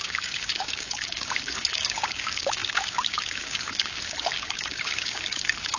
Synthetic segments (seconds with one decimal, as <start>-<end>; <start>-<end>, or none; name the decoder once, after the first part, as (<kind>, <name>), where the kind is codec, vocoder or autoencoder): 0.0-5.8 (codec, DAC)